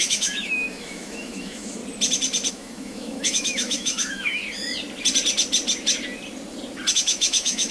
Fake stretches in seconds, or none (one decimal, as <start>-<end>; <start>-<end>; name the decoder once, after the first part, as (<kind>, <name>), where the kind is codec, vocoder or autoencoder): 0.0-1.8 (autoencoder, DAC-VAE); 2.5-4.4; 6.9-7.7